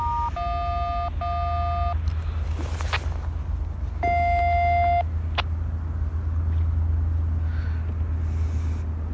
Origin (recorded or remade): recorded